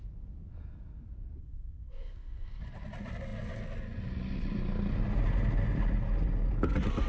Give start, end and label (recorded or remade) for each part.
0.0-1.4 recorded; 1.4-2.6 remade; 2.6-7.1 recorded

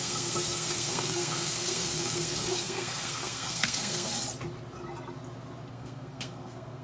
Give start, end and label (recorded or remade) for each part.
0.0-4.1 remade; 4.1-5.7 recorded; 5.7-6.8 remade

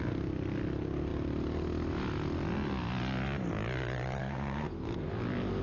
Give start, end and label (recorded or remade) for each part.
0.0-4.2 recorded; 4.2-5.1 remade; 5.1-5.6 recorded

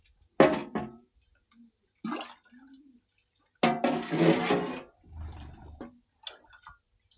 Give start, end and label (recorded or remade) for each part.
0.0-7.2 recorded